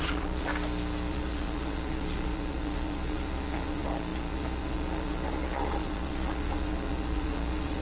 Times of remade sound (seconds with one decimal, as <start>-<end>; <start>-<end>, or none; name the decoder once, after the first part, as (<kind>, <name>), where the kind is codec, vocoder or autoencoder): 0.0-0.5 (vocoder, Vocos); 1.1-7.8

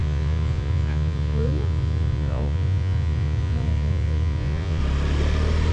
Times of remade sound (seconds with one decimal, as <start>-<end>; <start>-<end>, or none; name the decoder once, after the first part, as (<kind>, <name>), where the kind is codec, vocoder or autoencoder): 0.0-4.8 (vocoder, Vocos)

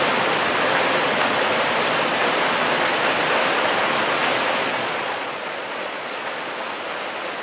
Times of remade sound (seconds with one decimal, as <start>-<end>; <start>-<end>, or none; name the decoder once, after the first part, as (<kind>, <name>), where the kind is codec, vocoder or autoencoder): 4.6-6.4 (vocoder, Vocos)

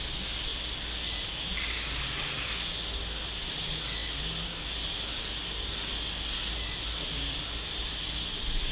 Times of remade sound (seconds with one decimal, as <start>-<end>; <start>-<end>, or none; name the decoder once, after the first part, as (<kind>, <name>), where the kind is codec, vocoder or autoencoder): none